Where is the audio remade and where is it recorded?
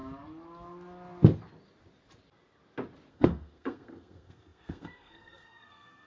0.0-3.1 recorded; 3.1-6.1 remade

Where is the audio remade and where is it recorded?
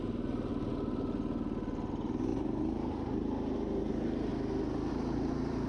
0.0-0.5 remade; 0.5-1.9 recorded; 1.9-2.3 remade; 2.3-3.9 recorded; 3.9-4.3 remade; 4.3-4.9 recorded; 4.9-5.7 remade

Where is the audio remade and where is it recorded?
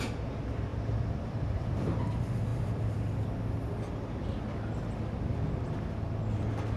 0.0-0.7 recorded; 0.7-1.7 remade; 1.7-6.8 recorded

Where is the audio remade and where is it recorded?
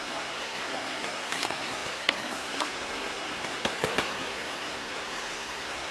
0.0-5.9 remade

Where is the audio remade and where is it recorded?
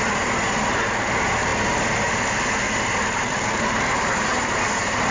0.0-5.1 recorded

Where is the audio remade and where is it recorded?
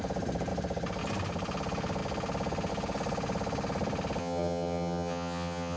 0.0-4.2 recorded; 4.2-5.8 remade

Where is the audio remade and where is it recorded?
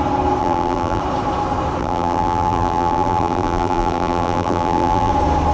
0.0-0.4 recorded; 0.4-1.0 remade; 1.0-1.8 recorded; 1.8-5.1 remade; 5.1-5.5 recorded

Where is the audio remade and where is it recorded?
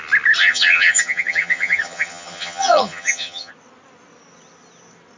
0.0-0.4 recorded; 0.4-3.5 remade; 3.5-5.2 recorded